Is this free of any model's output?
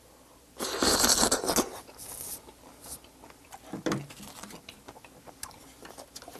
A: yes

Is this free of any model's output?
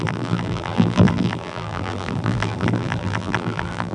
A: no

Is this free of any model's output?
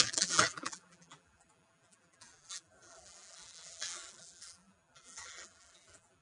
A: no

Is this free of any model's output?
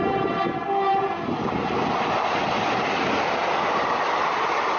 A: yes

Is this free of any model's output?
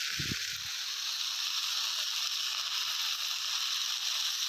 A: yes